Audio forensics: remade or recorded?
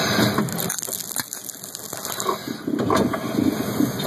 recorded